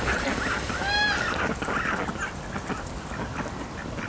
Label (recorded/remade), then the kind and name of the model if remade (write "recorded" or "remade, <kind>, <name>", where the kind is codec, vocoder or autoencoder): recorded